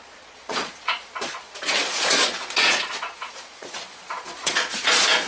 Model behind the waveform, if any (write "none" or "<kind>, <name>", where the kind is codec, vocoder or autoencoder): vocoder, Vocos